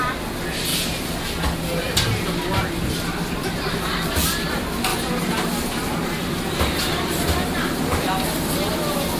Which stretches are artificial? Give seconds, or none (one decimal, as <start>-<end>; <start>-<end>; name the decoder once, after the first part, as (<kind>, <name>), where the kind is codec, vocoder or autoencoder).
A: none